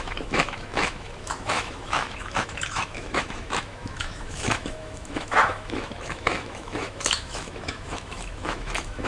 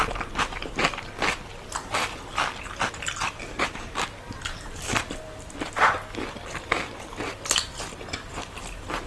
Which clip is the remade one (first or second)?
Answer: first